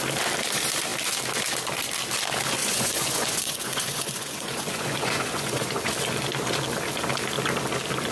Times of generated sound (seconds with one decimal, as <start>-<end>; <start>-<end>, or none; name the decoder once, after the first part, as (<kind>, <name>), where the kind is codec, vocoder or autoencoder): 2.6-5.9 (vocoder, Vocos)